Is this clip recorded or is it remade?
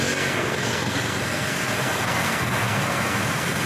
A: remade